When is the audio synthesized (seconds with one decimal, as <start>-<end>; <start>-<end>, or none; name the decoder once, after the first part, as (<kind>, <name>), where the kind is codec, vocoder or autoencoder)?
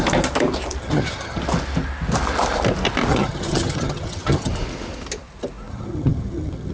0.8-1.4 (vocoder, HiFi-GAN); 3.1-4.5; 5.7-6.7